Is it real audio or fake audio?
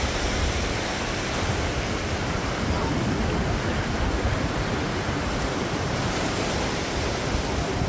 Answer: real